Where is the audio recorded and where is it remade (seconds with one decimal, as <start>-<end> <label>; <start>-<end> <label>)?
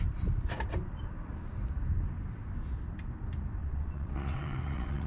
0.0-3.6 recorded; 3.6-5.1 remade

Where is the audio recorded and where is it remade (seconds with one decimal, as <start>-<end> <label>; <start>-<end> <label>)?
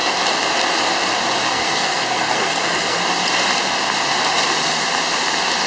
0.0-1.5 recorded; 1.5-3.0 remade; 3.0-5.7 recorded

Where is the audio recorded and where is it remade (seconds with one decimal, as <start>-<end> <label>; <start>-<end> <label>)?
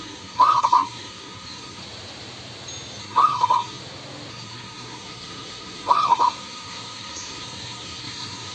0.0-1.8 remade; 1.8-3.0 recorded; 3.0-3.8 remade; 3.8-4.3 recorded; 4.3-8.5 remade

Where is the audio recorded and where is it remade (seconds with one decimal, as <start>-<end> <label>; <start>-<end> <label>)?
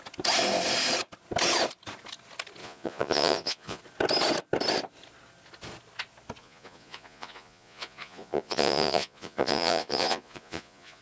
0.0-2.6 recorded; 2.6-3.8 remade; 3.8-6.4 recorded; 6.4-11.0 remade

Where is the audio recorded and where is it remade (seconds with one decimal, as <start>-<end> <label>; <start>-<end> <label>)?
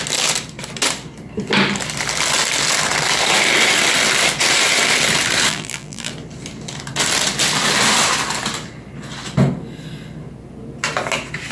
0.0-5.5 recorded; 5.5-6.1 remade; 6.1-11.5 recorded